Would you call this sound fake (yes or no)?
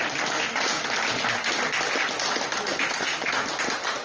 no